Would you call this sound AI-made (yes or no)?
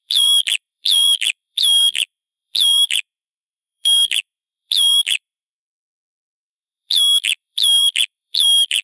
yes